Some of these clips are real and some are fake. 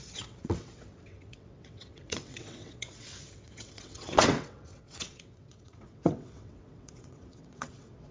fake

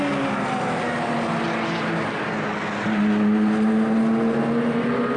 real